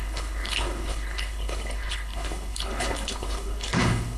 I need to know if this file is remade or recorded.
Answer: remade